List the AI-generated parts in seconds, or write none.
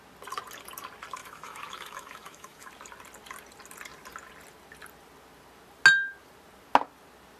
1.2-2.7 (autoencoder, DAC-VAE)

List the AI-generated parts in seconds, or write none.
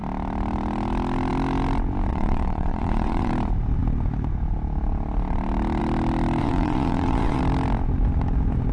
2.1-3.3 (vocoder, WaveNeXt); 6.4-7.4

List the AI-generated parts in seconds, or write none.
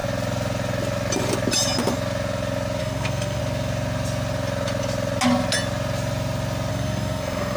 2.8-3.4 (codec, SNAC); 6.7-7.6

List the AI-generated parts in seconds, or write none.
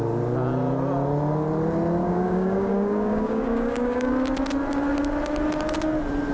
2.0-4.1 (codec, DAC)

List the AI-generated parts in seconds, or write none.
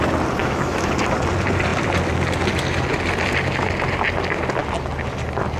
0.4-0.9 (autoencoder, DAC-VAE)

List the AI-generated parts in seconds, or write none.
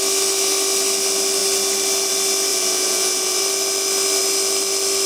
2.5-3.4 (vocoder, Vocos)